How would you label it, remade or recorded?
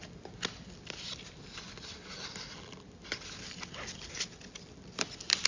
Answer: recorded